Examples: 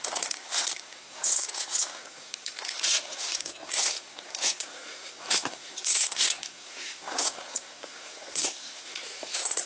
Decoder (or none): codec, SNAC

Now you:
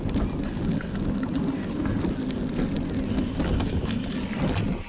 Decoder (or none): none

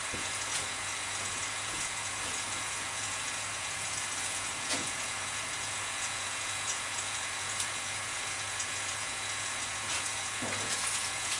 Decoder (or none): vocoder, Vocos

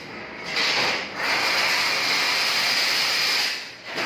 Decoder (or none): none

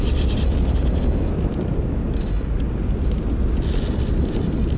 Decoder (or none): none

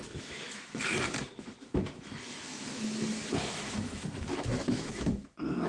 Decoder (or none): autoencoder, DAC-VAE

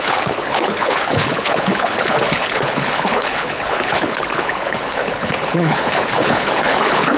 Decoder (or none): codec, HILCodec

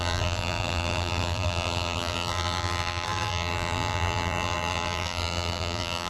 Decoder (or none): vocoder, BigVGAN v2